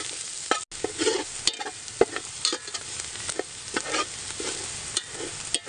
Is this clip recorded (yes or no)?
yes